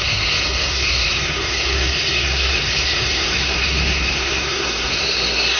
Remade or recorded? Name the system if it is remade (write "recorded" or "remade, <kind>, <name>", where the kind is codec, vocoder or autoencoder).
remade, codec, SNAC